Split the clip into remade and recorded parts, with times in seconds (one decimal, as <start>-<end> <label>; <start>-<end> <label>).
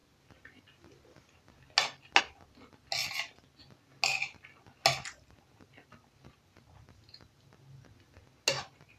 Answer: 0.0-9.0 recorded